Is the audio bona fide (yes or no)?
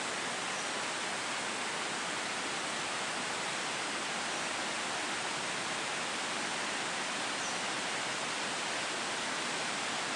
yes